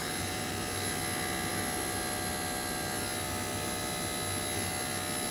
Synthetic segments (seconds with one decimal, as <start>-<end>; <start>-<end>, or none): 0.0-0.5